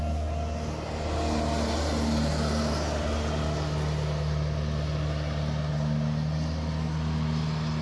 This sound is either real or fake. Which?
real